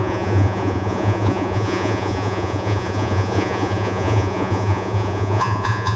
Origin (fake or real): fake